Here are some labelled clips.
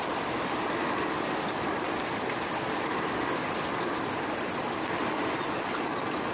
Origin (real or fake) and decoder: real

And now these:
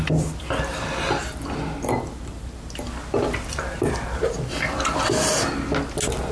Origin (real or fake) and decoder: real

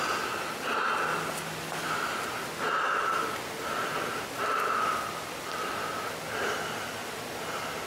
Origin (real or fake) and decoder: real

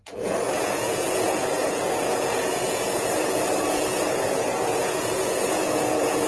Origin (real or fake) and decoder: fake, vocoder, Vocos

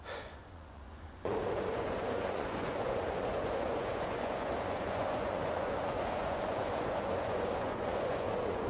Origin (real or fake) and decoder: fake, vocoder, Vocos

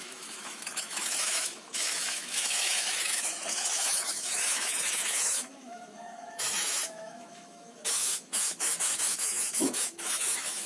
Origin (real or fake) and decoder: fake, autoencoder, DAC-VAE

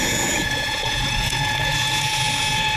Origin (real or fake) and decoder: fake, vocoder, Vocos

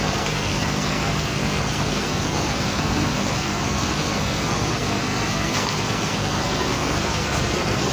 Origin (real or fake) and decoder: fake, codec, SNAC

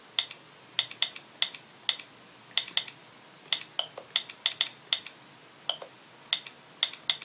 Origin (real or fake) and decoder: real